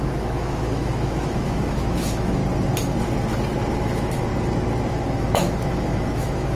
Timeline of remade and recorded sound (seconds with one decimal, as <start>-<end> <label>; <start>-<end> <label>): 0.0-2.4 remade; 2.4-3.7 recorded; 3.7-4.3 remade; 4.3-4.9 recorded; 4.9-6.6 remade